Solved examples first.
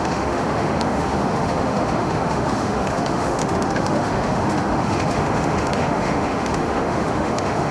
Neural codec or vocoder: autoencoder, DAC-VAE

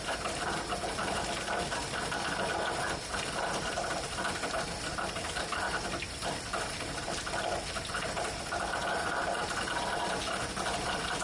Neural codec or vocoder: none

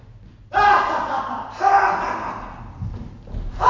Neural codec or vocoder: none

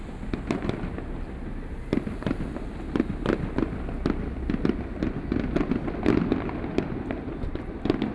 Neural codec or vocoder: none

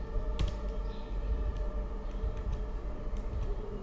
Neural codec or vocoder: none